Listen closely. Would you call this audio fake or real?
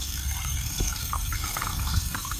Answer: fake